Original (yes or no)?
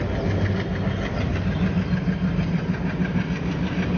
yes